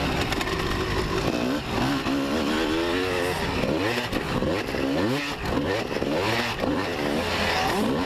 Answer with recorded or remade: recorded